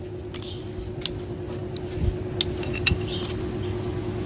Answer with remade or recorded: recorded